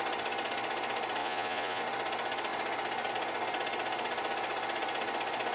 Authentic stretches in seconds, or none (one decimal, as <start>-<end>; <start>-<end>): 0.0-1.2; 1.8-5.5